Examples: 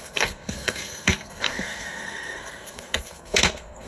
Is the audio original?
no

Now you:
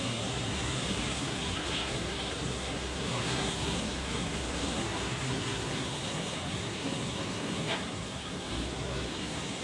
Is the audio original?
no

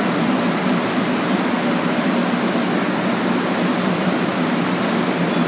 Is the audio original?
yes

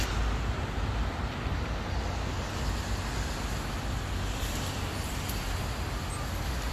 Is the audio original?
yes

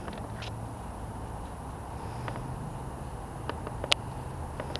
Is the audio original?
yes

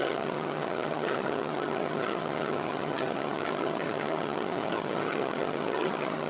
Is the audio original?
no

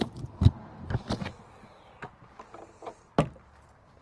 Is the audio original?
yes